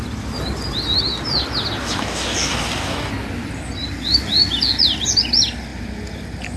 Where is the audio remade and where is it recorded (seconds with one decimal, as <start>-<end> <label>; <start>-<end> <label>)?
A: 0.0-1.8 recorded; 1.8-3.1 remade; 3.1-6.6 recorded